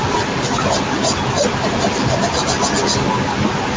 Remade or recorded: recorded